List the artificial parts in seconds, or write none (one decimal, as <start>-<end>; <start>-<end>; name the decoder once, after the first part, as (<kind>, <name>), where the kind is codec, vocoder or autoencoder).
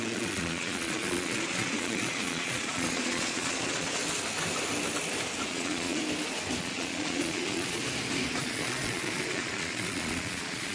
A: 0.0-4.0 (vocoder, Vocos); 5.5-6.0; 6.6-7.8; 8.4-10.7